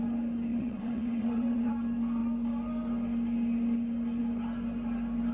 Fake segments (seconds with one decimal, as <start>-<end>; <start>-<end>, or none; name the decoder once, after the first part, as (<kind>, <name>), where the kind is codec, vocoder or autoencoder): 0.5-1.7 (vocoder, WaveNeXt)